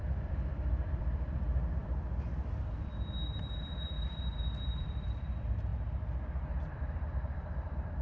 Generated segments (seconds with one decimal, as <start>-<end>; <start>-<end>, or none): 0.0-5.7; 6.6-8.0